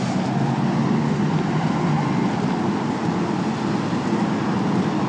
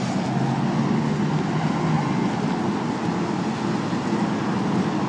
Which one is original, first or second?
second